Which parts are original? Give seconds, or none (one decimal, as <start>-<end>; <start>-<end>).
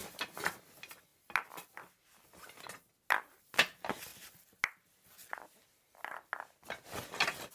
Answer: 0.0-7.5